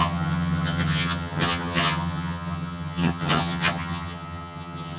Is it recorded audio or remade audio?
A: remade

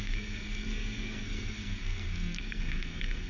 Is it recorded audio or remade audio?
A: remade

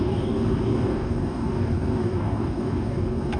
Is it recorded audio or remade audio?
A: remade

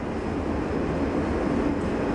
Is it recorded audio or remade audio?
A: recorded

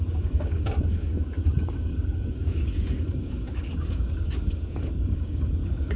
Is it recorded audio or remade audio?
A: remade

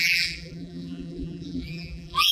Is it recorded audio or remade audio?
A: remade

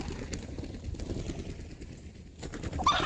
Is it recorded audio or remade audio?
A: recorded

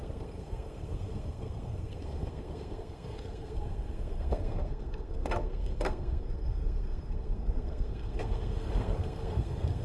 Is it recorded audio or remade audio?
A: remade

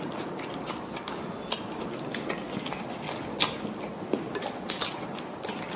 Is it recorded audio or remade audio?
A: recorded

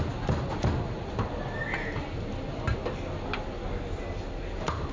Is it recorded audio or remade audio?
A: recorded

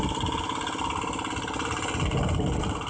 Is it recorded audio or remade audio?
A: recorded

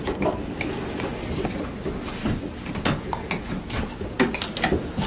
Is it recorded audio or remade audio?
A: recorded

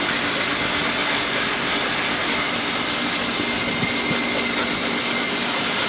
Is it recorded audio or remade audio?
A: recorded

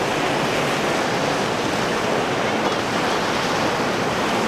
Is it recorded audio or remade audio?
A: recorded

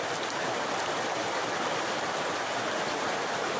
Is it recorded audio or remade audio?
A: recorded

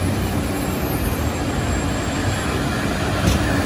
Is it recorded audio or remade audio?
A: recorded